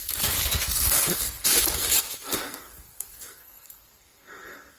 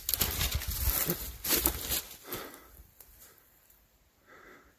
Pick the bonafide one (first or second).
second